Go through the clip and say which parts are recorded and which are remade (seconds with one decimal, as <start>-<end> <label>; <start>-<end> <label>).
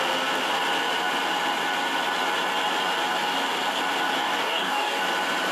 0.0-4.2 recorded; 4.2-5.0 remade; 5.0-5.5 recorded